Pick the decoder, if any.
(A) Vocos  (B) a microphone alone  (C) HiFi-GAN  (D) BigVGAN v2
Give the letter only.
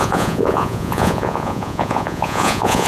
A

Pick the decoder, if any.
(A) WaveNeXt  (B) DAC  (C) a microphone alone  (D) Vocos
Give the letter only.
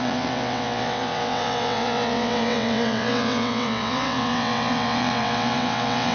A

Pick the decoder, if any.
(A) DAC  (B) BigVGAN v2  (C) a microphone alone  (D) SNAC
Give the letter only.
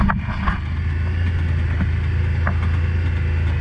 C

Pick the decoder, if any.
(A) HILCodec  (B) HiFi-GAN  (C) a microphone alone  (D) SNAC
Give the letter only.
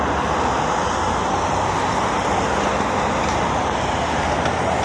C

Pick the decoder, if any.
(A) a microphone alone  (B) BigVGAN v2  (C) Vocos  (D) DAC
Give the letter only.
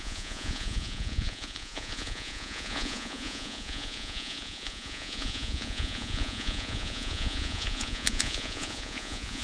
C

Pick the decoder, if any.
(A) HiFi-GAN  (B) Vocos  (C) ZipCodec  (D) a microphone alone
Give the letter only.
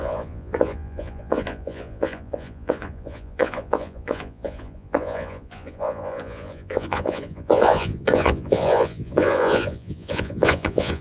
B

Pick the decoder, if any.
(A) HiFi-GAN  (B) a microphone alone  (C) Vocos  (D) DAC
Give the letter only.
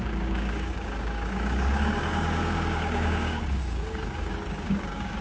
D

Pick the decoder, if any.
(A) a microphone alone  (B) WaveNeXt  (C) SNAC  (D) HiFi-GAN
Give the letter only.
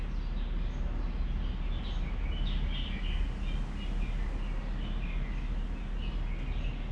A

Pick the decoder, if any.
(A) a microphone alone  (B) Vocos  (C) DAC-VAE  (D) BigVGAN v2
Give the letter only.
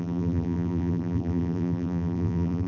D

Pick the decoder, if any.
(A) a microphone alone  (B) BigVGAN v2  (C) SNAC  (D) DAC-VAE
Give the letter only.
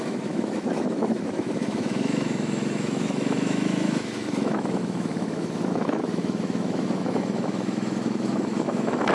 D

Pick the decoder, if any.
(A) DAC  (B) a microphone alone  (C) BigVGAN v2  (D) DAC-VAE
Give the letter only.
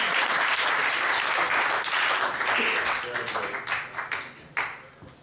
B